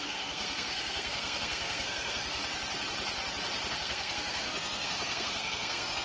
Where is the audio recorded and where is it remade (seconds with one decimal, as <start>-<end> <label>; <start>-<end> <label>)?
0.0-2.4 remade; 2.4-3.7 recorded; 3.7-6.0 remade

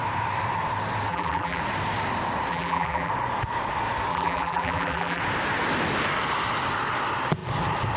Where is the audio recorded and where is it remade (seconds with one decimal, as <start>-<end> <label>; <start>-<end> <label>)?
0.0-1.1 recorded; 1.1-1.6 remade; 1.6-2.5 recorded; 2.5-3.1 remade; 3.1-4.1 recorded; 4.1-5.2 remade; 5.2-8.0 recorded

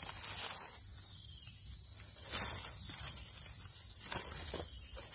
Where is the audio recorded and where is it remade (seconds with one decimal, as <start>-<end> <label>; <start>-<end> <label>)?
0.0-5.1 recorded

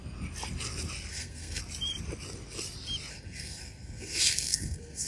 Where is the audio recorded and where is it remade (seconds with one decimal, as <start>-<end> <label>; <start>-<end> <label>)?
0.0-1.1 recorded; 1.1-1.6 remade; 1.6-3.1 recorded; 3.1-5.1 remade

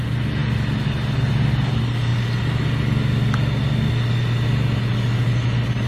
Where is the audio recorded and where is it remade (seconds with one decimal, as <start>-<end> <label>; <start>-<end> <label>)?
0.0-5.9 recorded

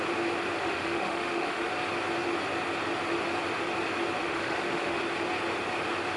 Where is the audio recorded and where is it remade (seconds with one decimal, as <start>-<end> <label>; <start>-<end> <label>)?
0.0-0.6 recorded; 0.6-1.7 remade; 1.7-4.2 recorded; 4.2-5.0 remade; 5.0-6.2 recorded

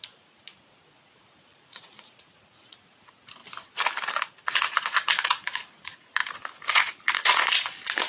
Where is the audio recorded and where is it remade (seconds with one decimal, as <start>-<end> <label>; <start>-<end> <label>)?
0.0-3.4 remade; 3.4-4.1 recorded; 4.1-6.2 remade; 6.2-6.7 recorded; 6.7-8.1 remade